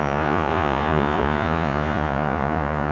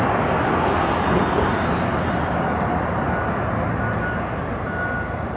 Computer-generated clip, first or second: first